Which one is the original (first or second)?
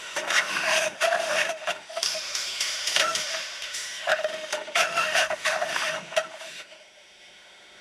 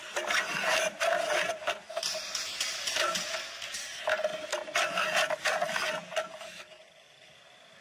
second